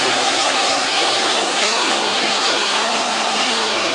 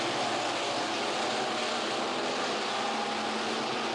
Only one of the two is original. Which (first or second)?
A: second